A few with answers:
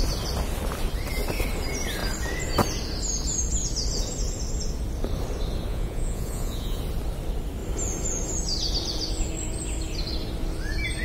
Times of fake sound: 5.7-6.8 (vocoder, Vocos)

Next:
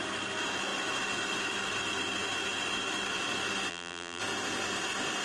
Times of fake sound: 3.7-4.2 (vocoder, BigVGAN v2)

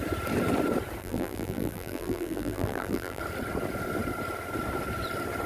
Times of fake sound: 1.0-3.2 (vocoder, BigVGAN v2)

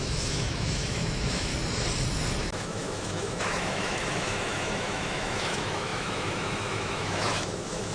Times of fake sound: 0.0-1.5 (autoencoder, DAC-VAE); 2.4-7.9

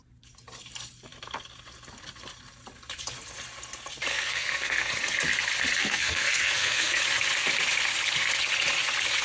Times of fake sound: 4.1-4.9 (codec, SNAC); 5.8-7.0